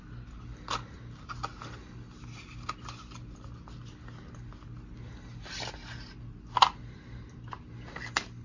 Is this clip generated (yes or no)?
no